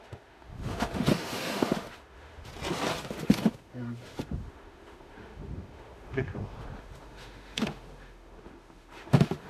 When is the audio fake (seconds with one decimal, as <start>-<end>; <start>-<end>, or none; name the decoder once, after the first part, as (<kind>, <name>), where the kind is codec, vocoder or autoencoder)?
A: 0.0-2.5 (autoencoder, DAC-VAE); 3.0-9.5